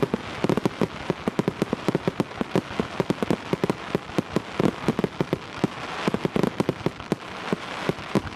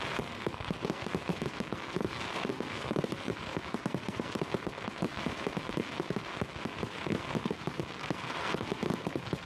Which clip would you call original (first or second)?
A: first